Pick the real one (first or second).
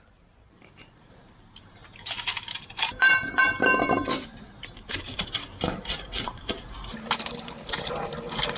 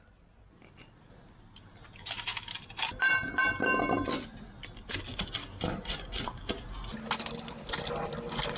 second